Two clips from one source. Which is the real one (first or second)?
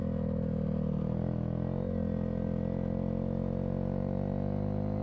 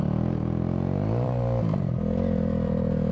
first